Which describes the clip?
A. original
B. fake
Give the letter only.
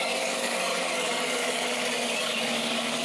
B